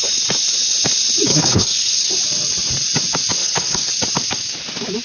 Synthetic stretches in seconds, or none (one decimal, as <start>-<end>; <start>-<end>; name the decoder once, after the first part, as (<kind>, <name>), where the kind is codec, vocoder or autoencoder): 1.3-2.1 (codec, HILCodec); 3.4-3.9